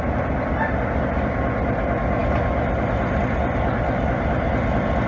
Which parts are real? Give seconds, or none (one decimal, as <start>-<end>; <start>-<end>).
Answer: 0.0-5.1